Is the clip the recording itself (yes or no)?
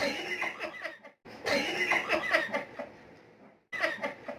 yes